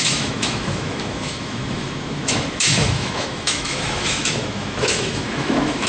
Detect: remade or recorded remade